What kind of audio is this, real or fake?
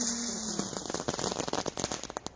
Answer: real